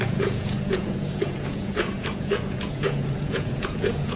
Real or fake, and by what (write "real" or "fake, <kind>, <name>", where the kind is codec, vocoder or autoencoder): fake, vocoder, Vocos